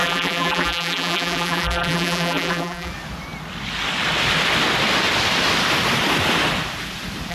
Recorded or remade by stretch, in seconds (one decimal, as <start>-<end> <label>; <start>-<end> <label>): 0.0-2.9 remade; 2.9-7.3 recorded